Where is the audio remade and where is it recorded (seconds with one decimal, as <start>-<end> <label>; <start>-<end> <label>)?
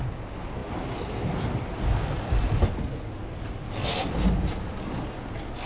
0.0-5.7 recorded